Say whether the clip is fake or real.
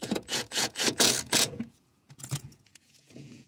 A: fake